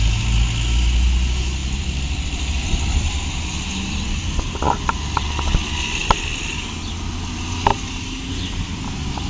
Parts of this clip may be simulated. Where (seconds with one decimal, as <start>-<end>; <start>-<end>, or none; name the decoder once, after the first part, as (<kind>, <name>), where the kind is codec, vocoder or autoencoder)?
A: 1.6-4.4 (vocoder, BigVGAN v2); 7.7-8.3